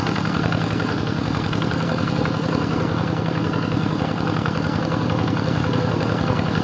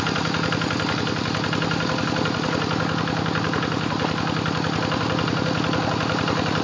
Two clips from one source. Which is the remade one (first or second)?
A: first